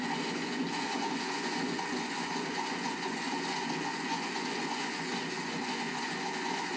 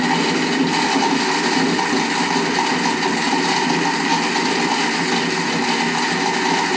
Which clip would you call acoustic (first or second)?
second